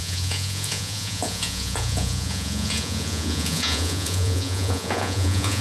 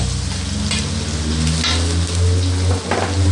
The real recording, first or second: second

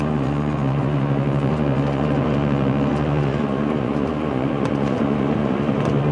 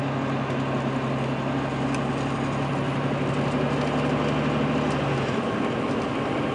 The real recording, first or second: second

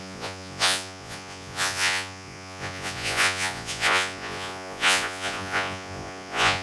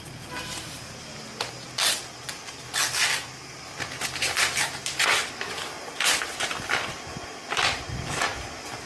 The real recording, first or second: second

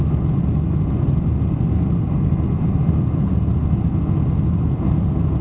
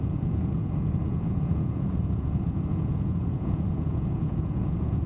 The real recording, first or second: first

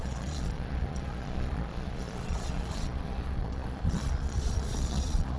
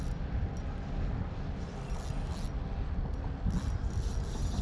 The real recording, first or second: second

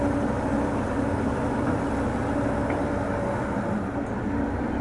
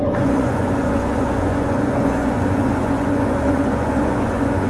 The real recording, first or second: first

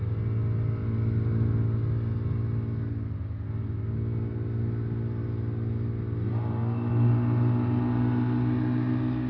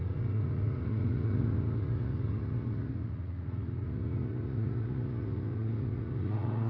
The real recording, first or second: first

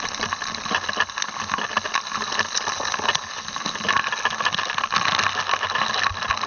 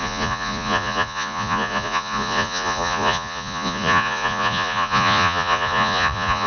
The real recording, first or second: first